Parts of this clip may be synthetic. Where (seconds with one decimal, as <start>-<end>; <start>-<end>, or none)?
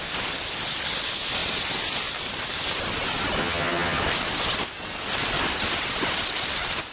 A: 3.4-4.0